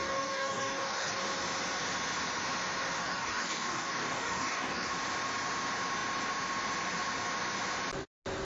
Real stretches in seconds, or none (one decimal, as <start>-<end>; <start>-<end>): 1.2-3.0; 4.9-8.4